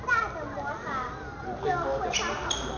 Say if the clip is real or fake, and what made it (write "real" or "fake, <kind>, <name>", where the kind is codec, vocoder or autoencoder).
real